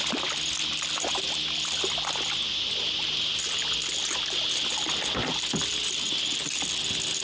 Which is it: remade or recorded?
recorded